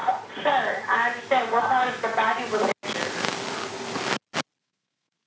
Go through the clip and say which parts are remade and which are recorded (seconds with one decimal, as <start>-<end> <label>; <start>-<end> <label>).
0.0-1.2 recorded; 1.2-2.1 remade; 2.1-4.6 recorded; 4.6-5.3 remade

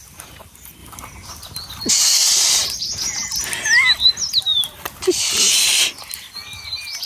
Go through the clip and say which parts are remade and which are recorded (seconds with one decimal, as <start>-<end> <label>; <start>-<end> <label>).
0.0-7.0 recorded

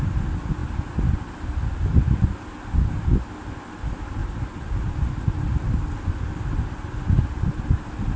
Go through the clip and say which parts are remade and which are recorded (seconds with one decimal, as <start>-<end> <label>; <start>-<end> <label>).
0.0-4.2 recorded; 4.2-5.5 remade; 5.5-8.2 recorded

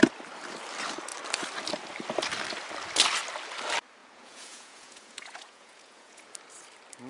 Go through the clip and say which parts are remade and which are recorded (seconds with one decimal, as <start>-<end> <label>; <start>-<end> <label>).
0.0-4.0 recorded; 4.0-6.3 remade; 6.3-7.1 recorded